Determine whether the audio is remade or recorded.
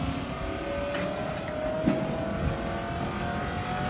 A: recorded